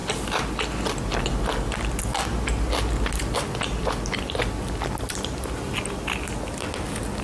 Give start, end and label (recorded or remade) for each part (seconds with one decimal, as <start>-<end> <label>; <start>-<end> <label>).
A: 0.0-7.2 recorded